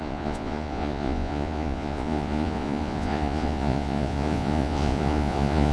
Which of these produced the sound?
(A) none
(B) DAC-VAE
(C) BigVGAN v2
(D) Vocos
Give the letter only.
D